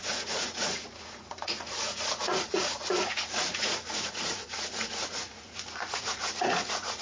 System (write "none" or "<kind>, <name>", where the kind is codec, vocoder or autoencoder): vocoder, Vocos